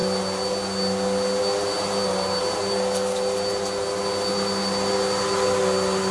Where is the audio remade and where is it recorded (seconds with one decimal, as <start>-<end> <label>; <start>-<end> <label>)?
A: 0.0-6.1 recorded

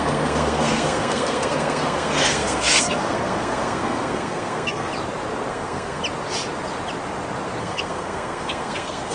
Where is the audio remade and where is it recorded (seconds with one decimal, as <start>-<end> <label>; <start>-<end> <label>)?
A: 0.0-4.9 remade; 4.9-5.5 recorded; 5.5-6.0 remade; 6.0-7.6 recorded; 7.6-9.1 remade

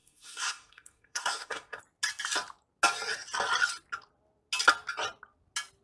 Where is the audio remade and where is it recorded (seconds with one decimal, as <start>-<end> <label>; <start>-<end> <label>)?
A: 0.0-1.8 remade; 1.8-5.8 recorded